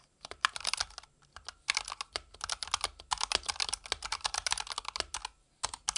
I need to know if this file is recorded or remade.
recorded